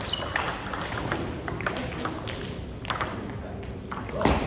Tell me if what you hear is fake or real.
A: real